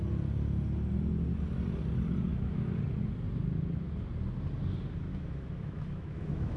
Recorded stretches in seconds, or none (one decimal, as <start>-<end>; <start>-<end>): 0.0-2.3; 2.8-5.1